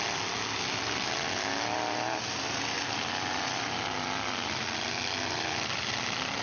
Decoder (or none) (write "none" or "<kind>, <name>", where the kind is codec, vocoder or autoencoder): none